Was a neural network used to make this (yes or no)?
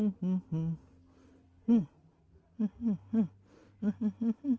no